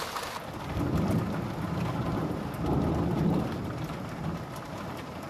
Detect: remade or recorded remade